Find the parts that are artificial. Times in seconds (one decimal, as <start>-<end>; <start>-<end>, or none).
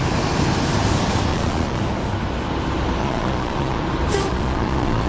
1.3-1.8; 3.0-3.8; 4.3-5.1